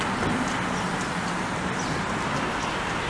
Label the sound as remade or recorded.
recorded